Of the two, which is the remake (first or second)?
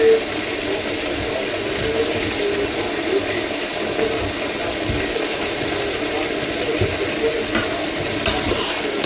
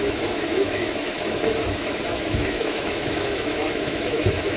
second